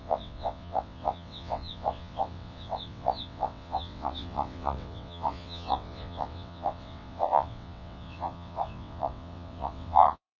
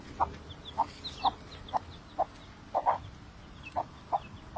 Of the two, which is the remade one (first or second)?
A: first